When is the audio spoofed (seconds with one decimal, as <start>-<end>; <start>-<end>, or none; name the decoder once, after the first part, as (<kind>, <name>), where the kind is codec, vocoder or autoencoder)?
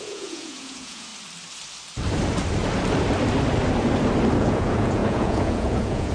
0.0-1.1 (vocoder, Vocos); 4.4-6.1